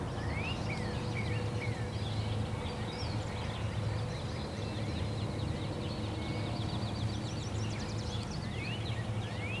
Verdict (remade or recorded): recorded